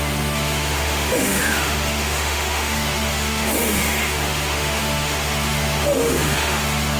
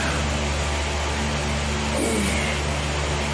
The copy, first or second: first